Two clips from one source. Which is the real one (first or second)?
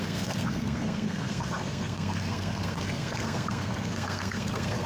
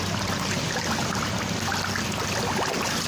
second